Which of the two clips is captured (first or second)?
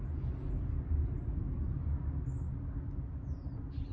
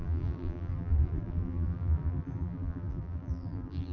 first